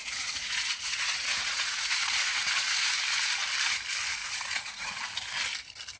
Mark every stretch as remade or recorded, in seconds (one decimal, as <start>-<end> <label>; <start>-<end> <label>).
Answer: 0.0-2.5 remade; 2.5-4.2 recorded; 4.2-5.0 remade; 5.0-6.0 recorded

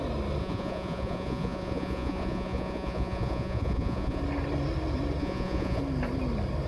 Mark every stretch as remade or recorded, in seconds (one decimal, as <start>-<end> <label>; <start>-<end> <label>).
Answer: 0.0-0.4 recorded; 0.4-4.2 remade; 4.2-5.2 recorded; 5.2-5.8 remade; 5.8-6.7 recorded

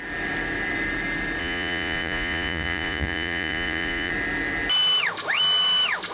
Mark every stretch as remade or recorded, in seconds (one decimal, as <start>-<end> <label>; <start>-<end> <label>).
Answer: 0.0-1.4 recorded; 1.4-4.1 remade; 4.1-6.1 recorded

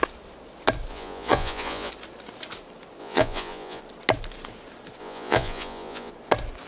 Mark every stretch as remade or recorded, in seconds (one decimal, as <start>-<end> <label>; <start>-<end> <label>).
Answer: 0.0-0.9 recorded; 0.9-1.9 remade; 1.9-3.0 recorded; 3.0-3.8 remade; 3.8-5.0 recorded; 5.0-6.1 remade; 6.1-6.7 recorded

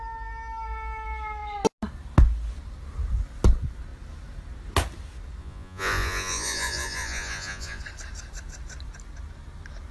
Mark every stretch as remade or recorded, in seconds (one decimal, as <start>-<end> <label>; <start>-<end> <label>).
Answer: 0.0-5.4 recorded; 5.4-7.8 remade; 7.8-9.9 recorded

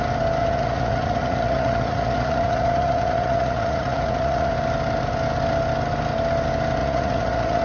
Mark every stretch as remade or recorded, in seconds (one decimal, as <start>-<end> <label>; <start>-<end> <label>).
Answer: 0.0-0.4 recorded; 0.4-4.5 remade; 4.5-6.8 recorded; 6.8-7.6 remade